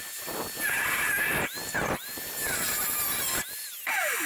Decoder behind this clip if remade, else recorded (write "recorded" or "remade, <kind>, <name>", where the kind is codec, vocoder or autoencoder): remade, vocoder, BigVGAN v2